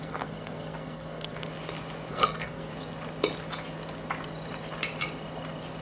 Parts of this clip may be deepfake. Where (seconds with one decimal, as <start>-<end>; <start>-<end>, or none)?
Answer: 0.0-1.5; 2.1-2.7